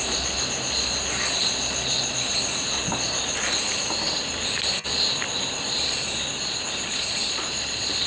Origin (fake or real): real